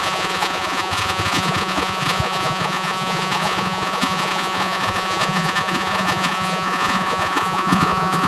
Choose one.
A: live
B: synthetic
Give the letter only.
B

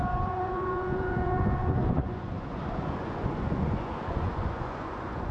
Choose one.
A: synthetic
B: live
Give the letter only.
A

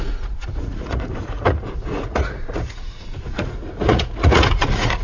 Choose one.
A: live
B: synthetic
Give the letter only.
B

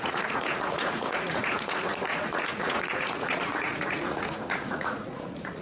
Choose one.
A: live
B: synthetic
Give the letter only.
B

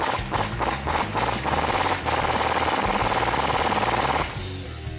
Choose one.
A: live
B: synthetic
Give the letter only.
A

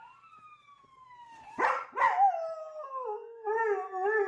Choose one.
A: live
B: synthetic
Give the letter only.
A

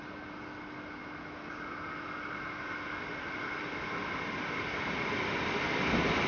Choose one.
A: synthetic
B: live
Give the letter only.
B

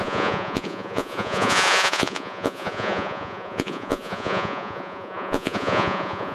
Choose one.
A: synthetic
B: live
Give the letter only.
A